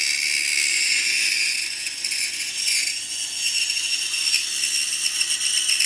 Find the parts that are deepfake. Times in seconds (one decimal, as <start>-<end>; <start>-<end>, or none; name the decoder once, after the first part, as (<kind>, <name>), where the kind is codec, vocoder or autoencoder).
0.7-4.2 (vocoder, Vocos)